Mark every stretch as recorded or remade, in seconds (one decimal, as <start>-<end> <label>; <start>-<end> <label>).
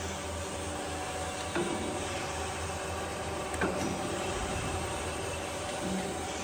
0.0-1.6 recorded; 1.6-2.4 remade; 2.4-3.1 recorded; 3.1-5.9 remade; 5.9-6.4 recorded